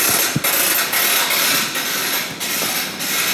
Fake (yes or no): no